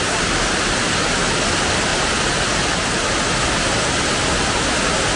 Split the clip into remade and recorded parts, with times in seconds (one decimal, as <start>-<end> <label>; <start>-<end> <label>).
0.0-5.2 recorded